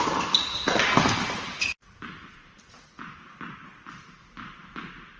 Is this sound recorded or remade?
recorded